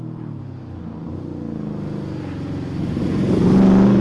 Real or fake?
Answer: real